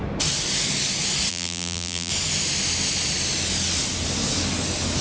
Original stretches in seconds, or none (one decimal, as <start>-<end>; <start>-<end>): 0.0-1.3; 2.1-5.0